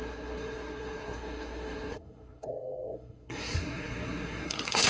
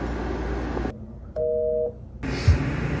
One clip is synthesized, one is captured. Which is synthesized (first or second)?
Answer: first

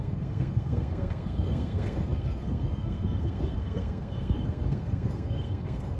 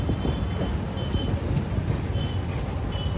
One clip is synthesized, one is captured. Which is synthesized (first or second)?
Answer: first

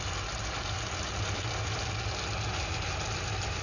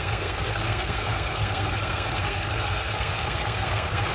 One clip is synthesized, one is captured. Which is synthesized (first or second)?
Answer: second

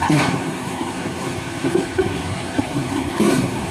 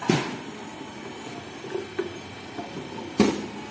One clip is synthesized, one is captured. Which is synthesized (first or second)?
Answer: first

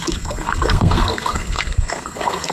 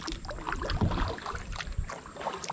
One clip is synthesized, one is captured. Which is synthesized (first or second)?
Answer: first